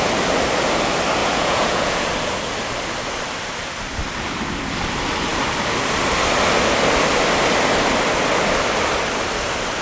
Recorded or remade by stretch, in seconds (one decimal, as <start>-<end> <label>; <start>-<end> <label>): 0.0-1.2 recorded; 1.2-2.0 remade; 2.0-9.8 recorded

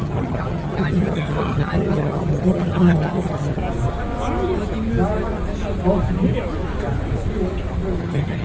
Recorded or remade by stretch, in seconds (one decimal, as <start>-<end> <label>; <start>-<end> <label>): 0.0-3.6 remade; 3.6-8.0 recorded; 8.0-8.4 remade

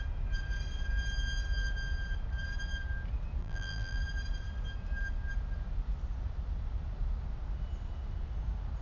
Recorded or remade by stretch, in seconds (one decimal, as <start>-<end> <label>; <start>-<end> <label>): 0.0-3.4 recorded; 3.4-4.0 remade; 4.0-8.8 recorded

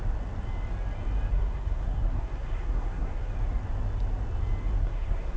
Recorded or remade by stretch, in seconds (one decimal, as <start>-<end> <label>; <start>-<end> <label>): 0.0-1.3 recorded; 1.3-3.3 remade; 3.3-4.8 recorded; 4.8-5.4 remade